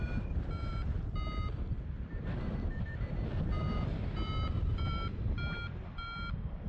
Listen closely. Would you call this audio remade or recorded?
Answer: remade